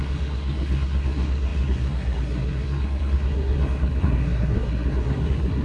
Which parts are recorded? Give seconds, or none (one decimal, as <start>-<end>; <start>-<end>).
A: none